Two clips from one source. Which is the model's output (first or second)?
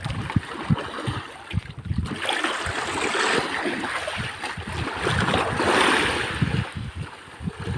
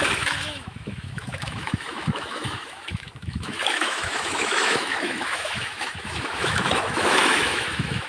second